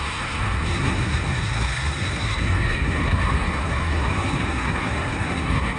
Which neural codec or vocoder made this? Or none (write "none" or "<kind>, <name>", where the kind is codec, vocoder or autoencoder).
codec, SNAC